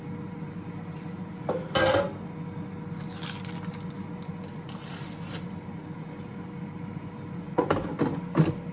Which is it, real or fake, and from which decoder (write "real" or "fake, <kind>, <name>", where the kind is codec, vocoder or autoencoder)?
real